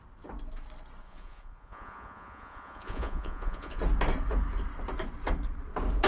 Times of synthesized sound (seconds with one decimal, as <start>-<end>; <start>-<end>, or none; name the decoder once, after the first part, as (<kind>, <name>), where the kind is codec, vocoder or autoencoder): 1.0-3.8 (vocoder, Vocos)